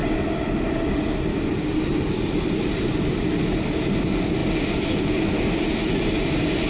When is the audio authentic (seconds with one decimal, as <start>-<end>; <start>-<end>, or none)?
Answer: 0.0-6.7